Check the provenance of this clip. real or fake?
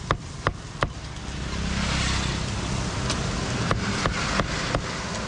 real